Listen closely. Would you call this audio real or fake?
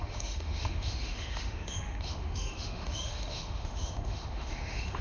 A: fake